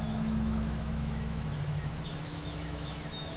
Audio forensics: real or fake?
fake